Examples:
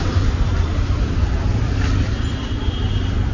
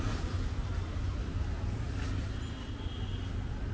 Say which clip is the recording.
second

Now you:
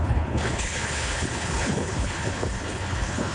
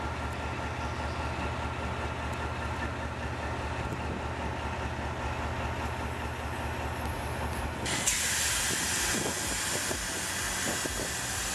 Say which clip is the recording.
second